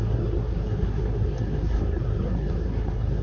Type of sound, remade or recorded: remade